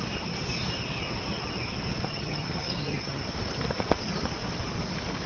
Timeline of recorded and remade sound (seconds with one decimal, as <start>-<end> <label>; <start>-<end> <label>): 0.0-2.1 recorded; 2.1-3.2 remade; 3.2-5.3 recorded